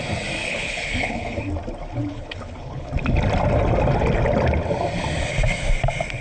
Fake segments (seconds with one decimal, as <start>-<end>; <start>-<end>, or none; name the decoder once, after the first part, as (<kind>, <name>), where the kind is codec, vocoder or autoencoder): 0.4-1.4 (codec, HILCodec); 2.1-2.9